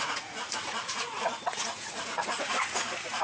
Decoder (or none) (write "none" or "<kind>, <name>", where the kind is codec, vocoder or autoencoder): vocoder, Vocos